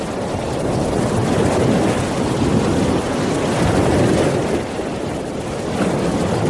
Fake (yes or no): no